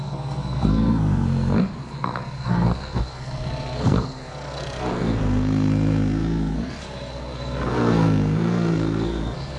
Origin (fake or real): fake